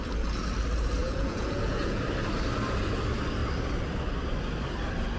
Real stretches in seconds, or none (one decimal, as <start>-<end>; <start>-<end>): 0.0-1.0; 2.0-5.2